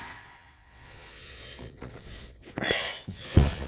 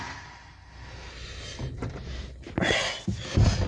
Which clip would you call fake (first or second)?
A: first